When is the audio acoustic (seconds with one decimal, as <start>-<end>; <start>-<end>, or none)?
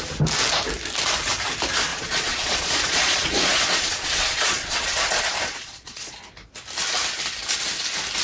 0.0-1.9; 6.1-8.2